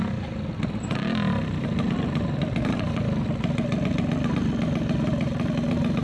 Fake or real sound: real